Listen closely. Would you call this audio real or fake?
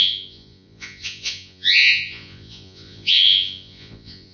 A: fake